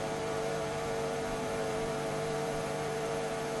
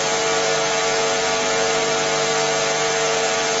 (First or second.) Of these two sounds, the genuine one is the second